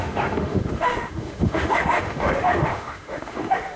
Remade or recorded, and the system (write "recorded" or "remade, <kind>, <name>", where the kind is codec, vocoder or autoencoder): remade, autoencoder, DAC-VAE